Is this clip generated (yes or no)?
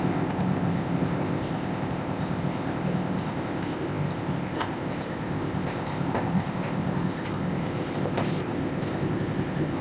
yes